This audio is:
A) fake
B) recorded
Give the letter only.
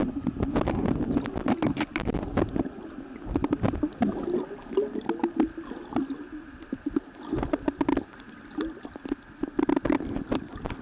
B